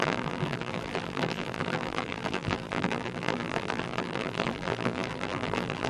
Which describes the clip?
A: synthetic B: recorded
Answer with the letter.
A